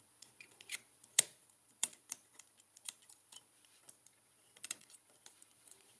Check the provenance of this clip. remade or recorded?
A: remade